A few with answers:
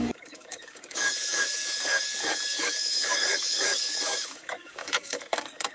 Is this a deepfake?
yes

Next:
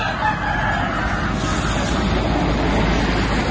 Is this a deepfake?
no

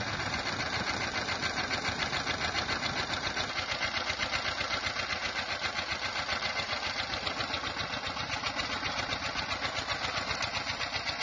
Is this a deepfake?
no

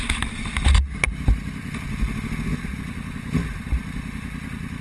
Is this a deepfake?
no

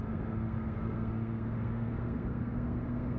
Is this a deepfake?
yes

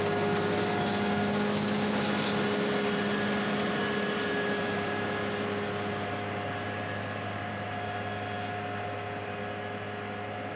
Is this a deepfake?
no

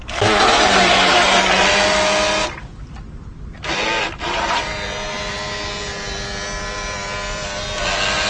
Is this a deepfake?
no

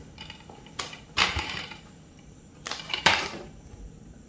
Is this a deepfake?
yes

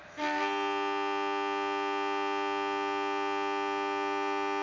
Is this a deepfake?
no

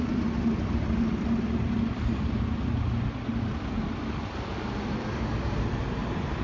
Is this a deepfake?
no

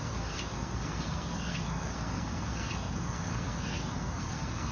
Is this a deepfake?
yes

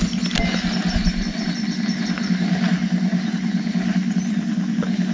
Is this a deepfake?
no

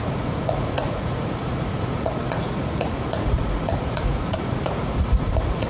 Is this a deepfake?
yes